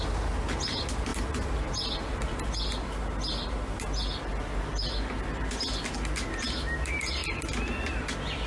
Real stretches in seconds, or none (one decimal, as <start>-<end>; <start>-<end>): 0.0-8.5

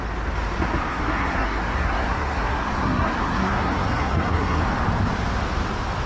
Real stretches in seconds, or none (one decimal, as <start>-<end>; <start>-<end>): 0.0-0.9; 4.6-6.1

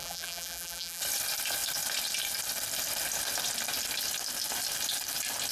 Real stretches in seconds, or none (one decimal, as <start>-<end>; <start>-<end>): 1.0-5.5

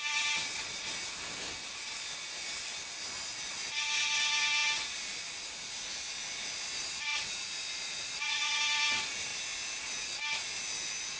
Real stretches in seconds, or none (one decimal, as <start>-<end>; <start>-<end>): 0.0-7.1; 8.6-11.2

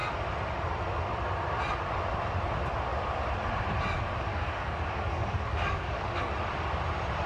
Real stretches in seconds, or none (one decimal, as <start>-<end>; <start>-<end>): 0.0-4.3; 6.3-7.3

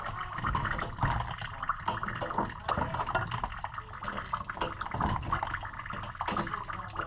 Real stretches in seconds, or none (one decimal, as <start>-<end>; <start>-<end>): 0.0-7.1